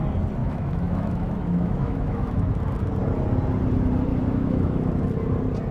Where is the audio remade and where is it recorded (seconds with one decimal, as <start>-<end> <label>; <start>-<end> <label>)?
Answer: 0.0-0.4 recorded; 0.4-2.5 remade; 2.5-4.1 recorded; 4.1-5.0 remade; 5.0-5.7 recorded